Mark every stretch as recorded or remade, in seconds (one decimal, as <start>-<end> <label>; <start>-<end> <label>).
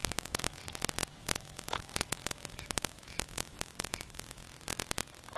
0.0-0.6 remade; 0.6-1.2 recorded; 1.2-4.4 remade; 4.4-5.4 recorded